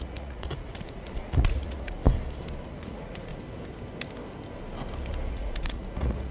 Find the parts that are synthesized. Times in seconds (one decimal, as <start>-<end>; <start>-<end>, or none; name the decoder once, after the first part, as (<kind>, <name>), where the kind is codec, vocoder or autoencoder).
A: 0.0-2.0 (vocoder, Vocos); 2.7-3.3; 5.3-6.3